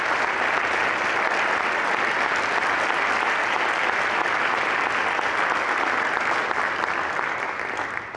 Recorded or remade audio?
recorded